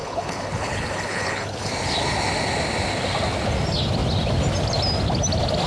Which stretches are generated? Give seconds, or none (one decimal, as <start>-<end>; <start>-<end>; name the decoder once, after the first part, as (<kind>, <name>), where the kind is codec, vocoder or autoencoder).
0.0-1.7 (codec, HILCodec)